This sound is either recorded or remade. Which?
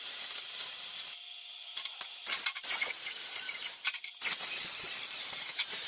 remade